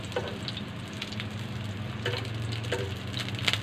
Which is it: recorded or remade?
recorded